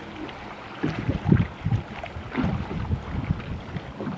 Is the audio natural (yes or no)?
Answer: yes